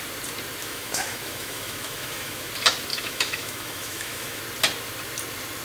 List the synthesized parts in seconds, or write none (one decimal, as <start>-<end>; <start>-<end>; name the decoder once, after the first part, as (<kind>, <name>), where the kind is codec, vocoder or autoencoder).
0.6-2.5 (autoencoder, DAC-VAE); 2.9-4.4